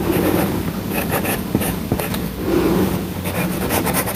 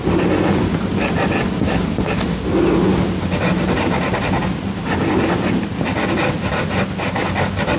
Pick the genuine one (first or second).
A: second